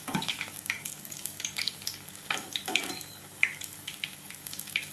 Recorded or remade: remade